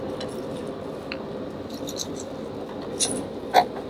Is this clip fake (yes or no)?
yes